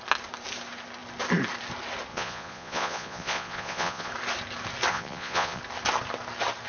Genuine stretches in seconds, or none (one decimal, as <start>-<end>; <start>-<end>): 0.0-2.1; 4.1-4.9; 5.6-6.7